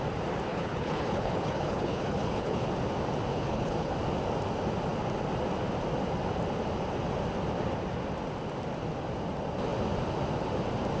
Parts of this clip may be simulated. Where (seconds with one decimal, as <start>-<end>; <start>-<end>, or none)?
0.5-2.7; 3.3-3.9